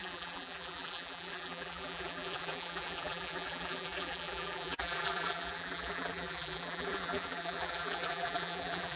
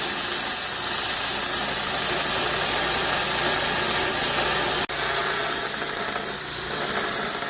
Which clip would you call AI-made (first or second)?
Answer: first